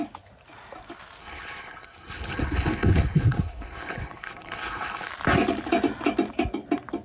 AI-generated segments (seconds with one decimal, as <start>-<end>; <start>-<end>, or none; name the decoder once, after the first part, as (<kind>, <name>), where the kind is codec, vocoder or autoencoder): 1.2-5.1 (codec, HILCodec)